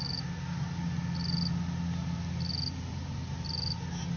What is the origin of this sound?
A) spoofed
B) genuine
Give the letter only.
B